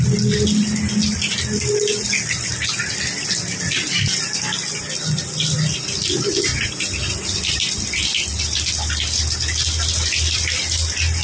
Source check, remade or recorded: recorded